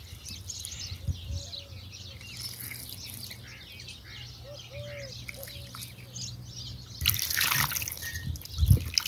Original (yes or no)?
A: yes